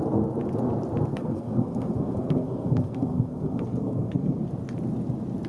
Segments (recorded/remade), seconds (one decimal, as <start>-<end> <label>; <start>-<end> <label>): 0.0-1.1 recorded; 1.1-4.4 remade; 4.4-5.5 recorded